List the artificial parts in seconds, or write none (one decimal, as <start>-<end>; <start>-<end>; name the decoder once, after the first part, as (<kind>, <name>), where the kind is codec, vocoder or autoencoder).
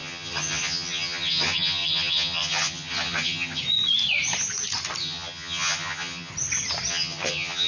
0.0-3.6 (vocoder, HiFi-GAN); 5.0-6.3; 6.9-7.7